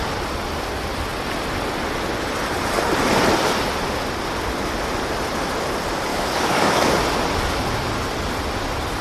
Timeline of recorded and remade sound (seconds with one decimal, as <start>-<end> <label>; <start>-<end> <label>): 0.0-6.1 recorded; 6.1-6.9 remade; 6.9-9.0 recorded